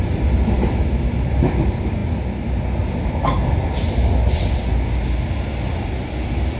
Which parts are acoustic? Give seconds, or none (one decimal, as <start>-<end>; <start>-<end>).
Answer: 0.0-6.6